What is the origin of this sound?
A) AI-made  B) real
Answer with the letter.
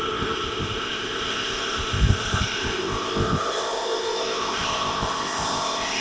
A